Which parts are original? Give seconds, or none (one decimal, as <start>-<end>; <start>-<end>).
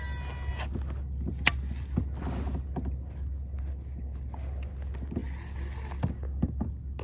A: 0.0-7.0